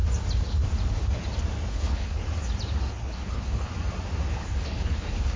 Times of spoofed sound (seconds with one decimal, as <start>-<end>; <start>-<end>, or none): 1.7-2.2; 2.9-3.7; 4.4-5.4